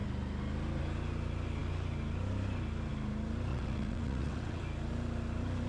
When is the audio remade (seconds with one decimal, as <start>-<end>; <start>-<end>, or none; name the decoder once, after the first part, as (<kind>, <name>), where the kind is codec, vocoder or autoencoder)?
3.5-4.6 (vocoder, WaveNeXt)